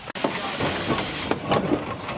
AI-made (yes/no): no